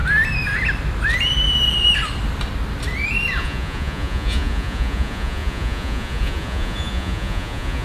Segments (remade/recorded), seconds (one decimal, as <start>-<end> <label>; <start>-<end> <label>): 0.0-3.4 recorded; 3.4-7.8 remade

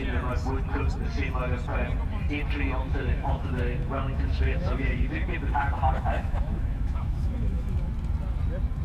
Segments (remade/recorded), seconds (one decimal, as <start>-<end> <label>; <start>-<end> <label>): 0.0-2.9 recorded; 2.9-7.9 remade; 7.9-8.8 recorded

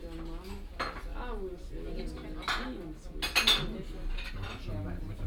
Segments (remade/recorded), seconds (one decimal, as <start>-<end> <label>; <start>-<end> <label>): 0.0-5.3 recorded

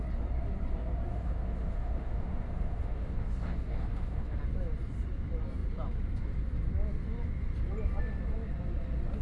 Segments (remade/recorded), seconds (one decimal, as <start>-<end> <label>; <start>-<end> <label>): 0.0-1.1 recorded; 1.1-4.4 remade; 4.4-9.2 recorded

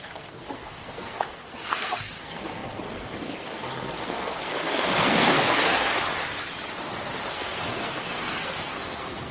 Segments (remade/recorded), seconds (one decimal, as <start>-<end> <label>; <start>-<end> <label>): 0.0-5.9 remade; 5.9-7.3 recorded; 7.3-9.3 remade